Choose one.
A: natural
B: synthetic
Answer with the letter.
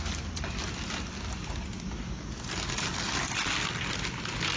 A